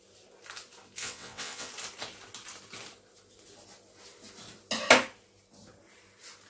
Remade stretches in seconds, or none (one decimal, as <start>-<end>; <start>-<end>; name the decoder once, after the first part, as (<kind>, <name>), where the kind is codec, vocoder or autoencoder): 1.0-1.7 (vocoder, WaveNeXt)